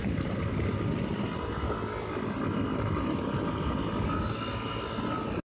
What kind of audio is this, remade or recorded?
recorded